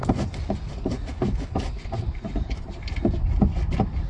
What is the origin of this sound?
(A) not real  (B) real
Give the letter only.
B